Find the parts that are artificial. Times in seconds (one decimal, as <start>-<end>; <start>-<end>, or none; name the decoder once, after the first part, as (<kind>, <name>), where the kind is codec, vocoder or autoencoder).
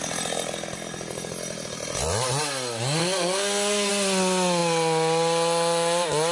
3.0-3.9 (codec, SNAC)